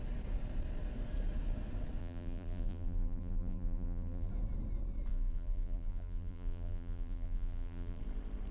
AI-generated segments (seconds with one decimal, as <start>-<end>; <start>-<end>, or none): 2.0-4.3; 5.1-8.0